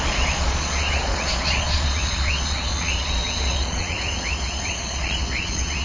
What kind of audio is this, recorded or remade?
remade